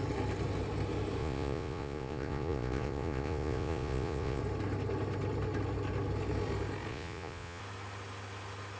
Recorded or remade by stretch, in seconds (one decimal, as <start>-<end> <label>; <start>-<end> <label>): 0.0-1.2 recorded; 1.2-4.4 remade; 4.4-6.9 recorded; 6.9-7.6 remade; 7.6-8.8 recorded